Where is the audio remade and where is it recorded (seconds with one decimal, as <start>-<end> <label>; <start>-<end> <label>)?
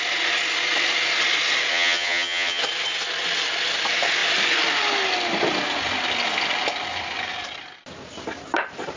0.0-1.7 recorded; 1.7-2.6 remade; 2.6-9.0 recorded